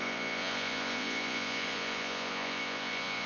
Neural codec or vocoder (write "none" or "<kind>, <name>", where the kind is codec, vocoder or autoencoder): vocoder, Vocos